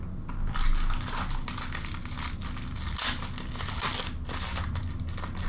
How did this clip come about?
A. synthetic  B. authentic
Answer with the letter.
B